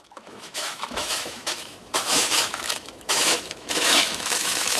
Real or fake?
fake